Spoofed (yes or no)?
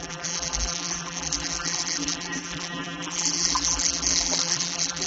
yes